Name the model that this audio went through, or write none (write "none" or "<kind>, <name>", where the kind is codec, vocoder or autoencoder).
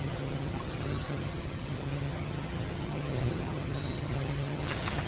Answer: vocoder, HiFi-GAN